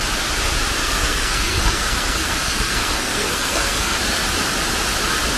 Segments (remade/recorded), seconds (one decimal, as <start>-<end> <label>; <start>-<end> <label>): 0.0-0.8 recorded; 0.8-4.0 remade; 4.0-5.4 recorded